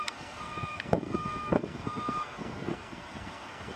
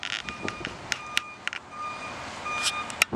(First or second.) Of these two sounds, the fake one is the first